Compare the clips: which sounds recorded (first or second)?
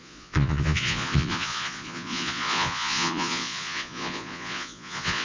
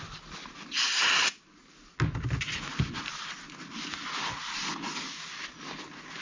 second